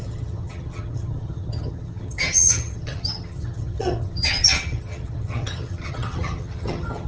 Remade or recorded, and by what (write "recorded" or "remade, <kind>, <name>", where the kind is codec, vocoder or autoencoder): remade, vocoder, HiFi-GAN